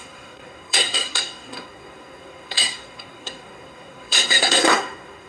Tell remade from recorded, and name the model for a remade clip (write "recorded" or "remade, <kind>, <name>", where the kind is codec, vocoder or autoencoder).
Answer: remade, codec, SNAC